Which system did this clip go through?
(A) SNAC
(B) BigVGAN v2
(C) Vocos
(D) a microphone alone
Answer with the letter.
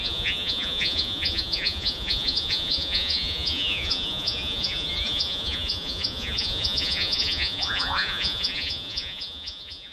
C